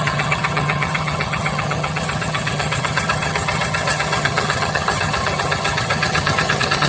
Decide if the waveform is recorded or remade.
remade